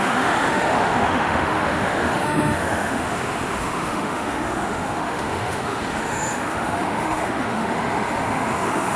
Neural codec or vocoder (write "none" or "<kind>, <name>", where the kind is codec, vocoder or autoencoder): autoencoder, DAC-VAE